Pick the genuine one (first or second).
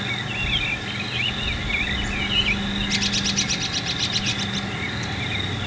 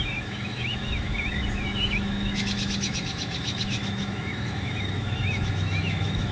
first